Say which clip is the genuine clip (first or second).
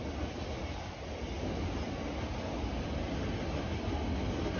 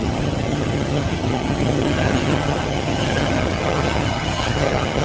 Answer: first